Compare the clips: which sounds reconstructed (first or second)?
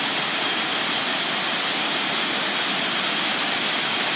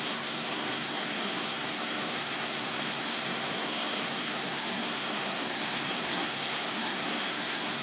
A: second